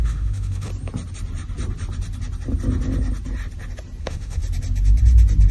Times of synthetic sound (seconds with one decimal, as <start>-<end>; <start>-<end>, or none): 0.0-0.7; 4.0-4.4